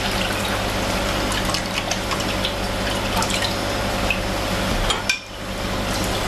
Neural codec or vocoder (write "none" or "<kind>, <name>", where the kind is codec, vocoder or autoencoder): none